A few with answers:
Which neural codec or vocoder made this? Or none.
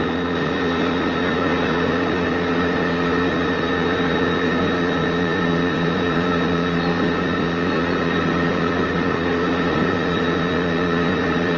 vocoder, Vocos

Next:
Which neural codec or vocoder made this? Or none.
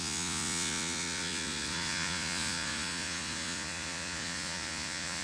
vocoder, Vocos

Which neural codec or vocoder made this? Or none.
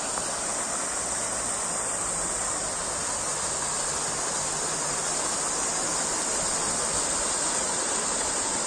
none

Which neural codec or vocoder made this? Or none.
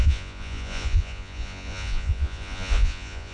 vocoder, Vocos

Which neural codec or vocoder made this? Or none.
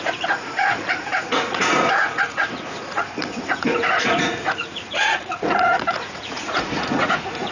vocoder, Vocos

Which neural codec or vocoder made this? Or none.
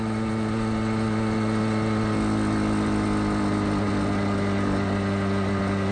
none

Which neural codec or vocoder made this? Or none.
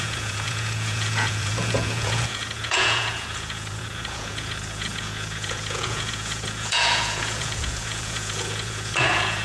vocoder, Vocos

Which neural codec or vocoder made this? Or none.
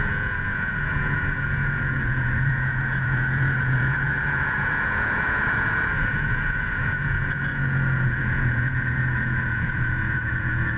vocoder, Vocos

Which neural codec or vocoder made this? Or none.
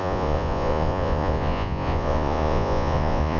vocoder, Vocos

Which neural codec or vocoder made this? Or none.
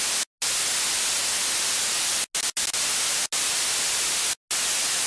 none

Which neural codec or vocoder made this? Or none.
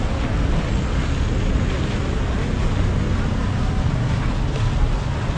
none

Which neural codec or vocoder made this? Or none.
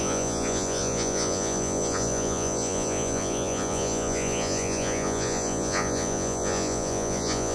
vocoder, Vocos